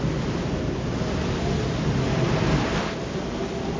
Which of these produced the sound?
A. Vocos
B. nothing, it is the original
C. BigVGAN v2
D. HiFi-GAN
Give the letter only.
B